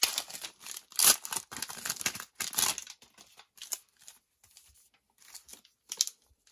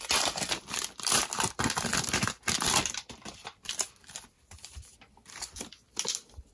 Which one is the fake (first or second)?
second